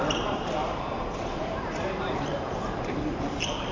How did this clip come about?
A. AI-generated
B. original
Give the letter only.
A